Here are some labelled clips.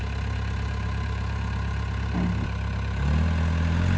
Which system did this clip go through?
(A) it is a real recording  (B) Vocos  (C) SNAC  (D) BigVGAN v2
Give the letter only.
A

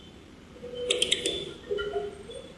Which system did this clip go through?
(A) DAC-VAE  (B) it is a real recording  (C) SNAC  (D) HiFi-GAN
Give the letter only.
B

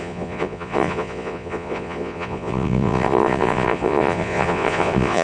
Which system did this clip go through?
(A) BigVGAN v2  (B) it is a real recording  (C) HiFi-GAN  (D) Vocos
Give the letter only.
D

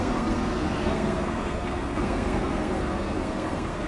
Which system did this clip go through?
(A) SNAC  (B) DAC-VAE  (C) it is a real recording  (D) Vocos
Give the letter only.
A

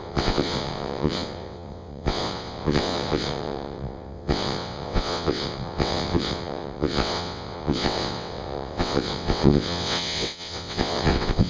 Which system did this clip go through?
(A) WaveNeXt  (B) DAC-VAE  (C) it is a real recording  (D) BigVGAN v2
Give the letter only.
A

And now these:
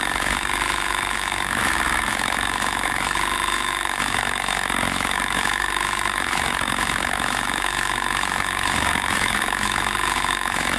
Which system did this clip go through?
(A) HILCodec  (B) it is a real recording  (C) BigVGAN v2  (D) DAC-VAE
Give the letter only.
D